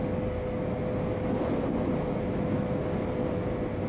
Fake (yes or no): no